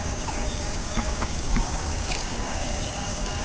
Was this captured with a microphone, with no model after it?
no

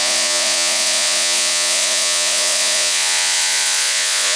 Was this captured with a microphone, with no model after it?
no